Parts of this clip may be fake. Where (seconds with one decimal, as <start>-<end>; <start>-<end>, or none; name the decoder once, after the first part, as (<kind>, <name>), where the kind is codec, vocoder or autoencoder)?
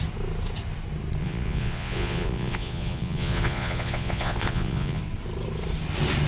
1.2-5.0 (vocoder, Vocos)